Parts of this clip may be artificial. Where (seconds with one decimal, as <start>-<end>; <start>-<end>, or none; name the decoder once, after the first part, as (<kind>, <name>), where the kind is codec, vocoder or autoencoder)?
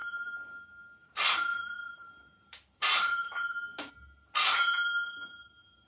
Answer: 0.0-0.7 (vocoder, BigVGAN v2); 1.5-3.9